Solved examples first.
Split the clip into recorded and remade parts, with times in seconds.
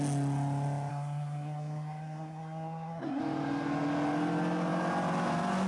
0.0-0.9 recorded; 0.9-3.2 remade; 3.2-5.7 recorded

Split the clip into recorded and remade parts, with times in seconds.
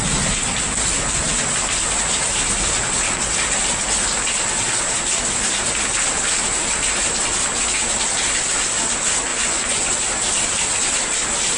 0.0-9.3 recorded; 9.3-10.0 remade; 10.0-11.6 recorded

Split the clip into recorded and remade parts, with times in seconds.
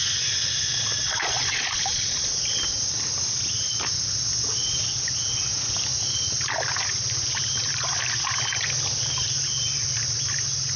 0.0-1.0 recorded; 1.0-1.7 remade; 1.7-10.8 recorded